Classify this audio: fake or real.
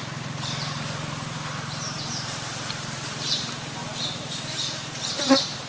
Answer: fake